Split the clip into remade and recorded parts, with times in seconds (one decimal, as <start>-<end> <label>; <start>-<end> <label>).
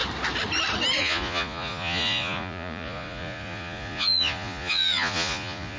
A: 0.0-1.0 recorded; 1.0-5.8 remade